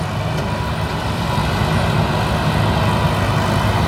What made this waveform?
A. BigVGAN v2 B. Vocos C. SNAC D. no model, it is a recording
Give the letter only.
D